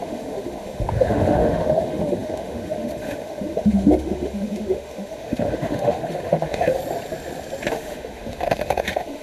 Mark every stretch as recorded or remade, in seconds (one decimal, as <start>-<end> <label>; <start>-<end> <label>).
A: 0.0-6.8 remade; 6.8-7.7 recorded; 7.7-9.2 remade